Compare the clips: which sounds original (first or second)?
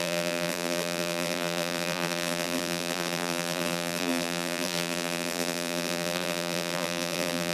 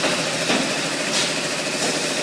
second